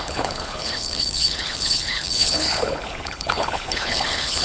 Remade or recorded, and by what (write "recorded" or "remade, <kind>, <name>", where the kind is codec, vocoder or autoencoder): remade, codec, HILCodec